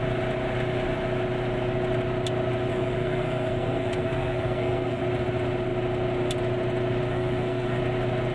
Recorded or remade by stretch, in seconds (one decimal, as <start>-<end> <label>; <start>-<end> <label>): 0.0-2.7 recorded; 2.7-5.0 remade; 5.0-7.1 recorded; 7.1-7.8 remade; 7.8-8.3 recorded